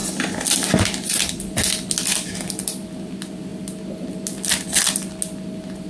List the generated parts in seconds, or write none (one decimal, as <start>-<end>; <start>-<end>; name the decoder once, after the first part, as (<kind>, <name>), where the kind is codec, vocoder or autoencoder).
none

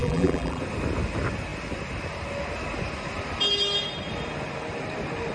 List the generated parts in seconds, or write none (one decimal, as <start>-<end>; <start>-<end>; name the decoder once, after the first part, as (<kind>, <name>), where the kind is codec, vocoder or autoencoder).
0.0-0.6 (vocoder, BigVGAN v2)

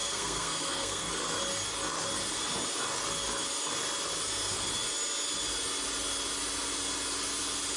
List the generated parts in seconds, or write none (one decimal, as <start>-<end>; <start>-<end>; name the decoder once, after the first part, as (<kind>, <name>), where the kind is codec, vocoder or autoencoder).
0.0-1.1 (codec, SNAC)